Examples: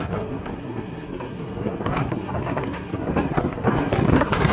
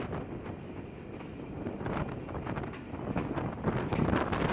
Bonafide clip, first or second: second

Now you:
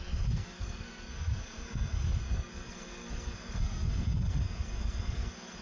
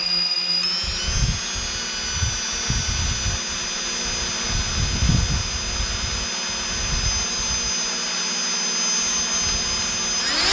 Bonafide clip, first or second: second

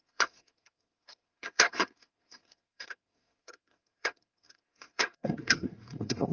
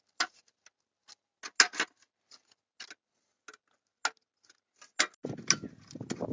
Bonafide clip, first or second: second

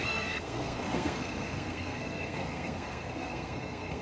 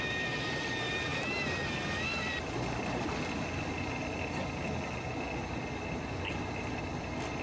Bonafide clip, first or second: second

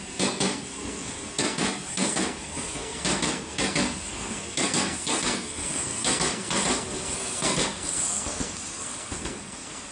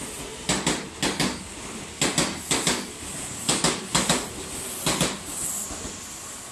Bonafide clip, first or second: second